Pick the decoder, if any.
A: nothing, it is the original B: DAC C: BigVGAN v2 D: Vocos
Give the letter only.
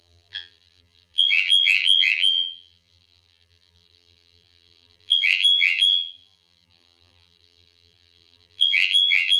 C